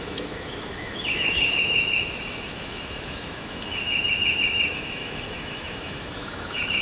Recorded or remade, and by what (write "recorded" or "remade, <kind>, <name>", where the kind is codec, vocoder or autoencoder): remade, autoencoder, DAC-VAE